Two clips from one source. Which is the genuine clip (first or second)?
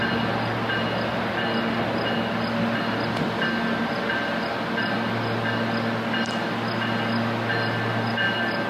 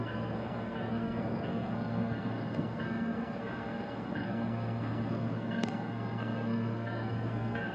first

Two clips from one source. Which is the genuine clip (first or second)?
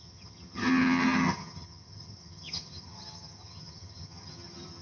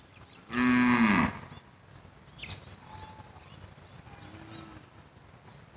second